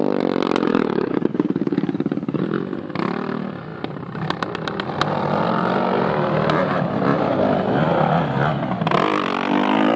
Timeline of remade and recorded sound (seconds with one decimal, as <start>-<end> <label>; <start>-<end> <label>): 0.0-0.7 recorded; 0.7-2.4 remade; 2.4-10.0 recorded